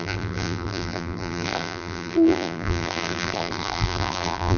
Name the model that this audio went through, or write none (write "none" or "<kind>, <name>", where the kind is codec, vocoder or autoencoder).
vocoder, BigVGAN v2